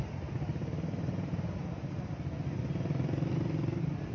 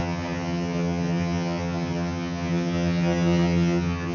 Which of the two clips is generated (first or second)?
second